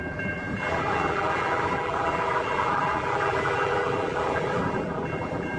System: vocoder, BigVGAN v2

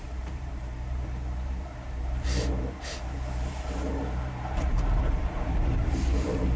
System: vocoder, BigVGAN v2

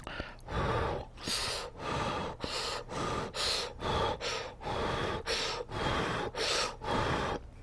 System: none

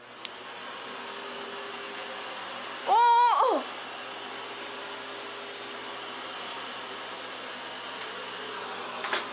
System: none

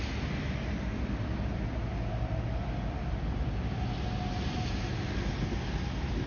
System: none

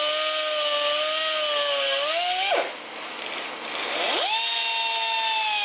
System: none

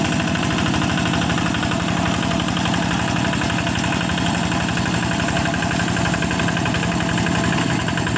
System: none